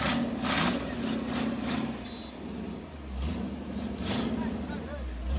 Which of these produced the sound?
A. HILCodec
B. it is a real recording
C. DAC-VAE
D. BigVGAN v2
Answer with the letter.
B